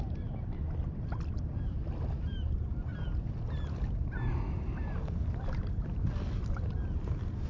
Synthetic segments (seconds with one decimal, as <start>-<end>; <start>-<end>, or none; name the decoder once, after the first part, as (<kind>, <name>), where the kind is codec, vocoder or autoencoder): none